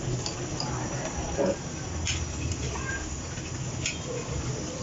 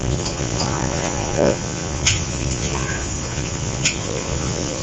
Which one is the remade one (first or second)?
second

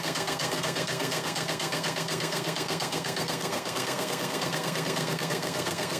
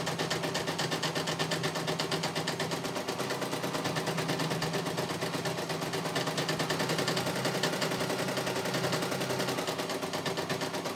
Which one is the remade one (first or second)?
first